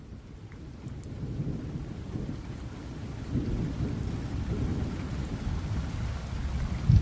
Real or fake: real